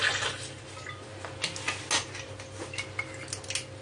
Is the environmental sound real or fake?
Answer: real